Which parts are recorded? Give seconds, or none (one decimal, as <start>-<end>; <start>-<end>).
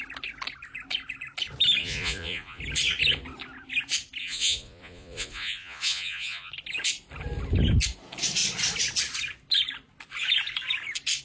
0.0-1.8; 2.6-4.2; 6.5-11.2